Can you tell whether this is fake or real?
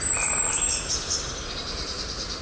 real